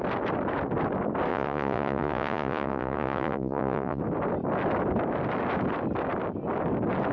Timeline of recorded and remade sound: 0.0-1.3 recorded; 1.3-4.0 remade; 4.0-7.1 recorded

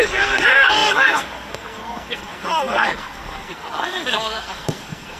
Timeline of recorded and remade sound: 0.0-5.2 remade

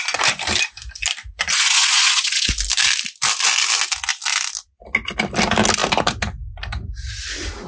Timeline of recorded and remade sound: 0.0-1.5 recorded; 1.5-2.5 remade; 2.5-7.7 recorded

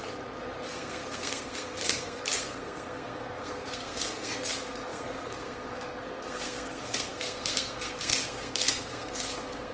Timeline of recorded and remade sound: 0.0-0.7 recorded; 0.7-9.7 remade

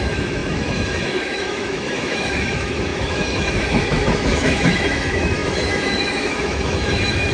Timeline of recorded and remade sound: 0.0-7.3 remade

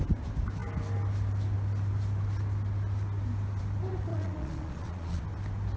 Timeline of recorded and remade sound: 0.0-4.1 recorded; 4.1-5.2 remade; 5.2-5.8 recorded

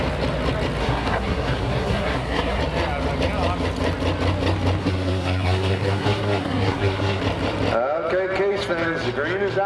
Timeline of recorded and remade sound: 0.0-0.8 recorded; 0.8-2.6 remade; 2.6-4.8 recorded; 4.8-7.2 remade; 7.2-9.7 recorded